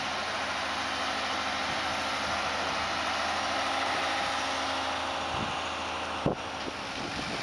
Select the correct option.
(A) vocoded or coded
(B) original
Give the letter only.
B